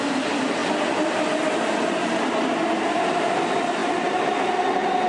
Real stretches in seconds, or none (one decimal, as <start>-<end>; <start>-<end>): 0.6-2.9; 3.8-5.1